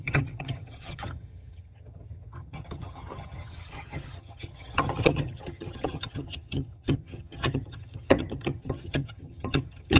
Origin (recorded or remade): remade